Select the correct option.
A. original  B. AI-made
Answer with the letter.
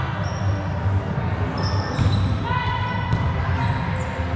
A